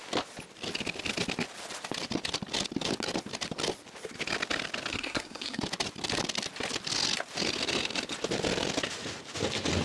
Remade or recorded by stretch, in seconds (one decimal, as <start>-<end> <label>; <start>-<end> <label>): 0.0-4.9 recorded; 4.9-5.6 remade; 5.6-9.8 recorded